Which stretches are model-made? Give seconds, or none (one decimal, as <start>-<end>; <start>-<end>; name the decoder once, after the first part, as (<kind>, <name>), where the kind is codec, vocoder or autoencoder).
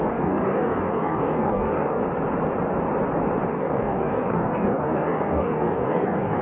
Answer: 0.0-2.0 (codec, DAC); 3.5-6.4